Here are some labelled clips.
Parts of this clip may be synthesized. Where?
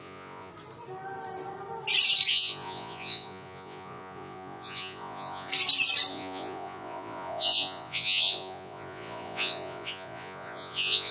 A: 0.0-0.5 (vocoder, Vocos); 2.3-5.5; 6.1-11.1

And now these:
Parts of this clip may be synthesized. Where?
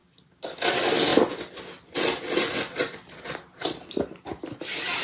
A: none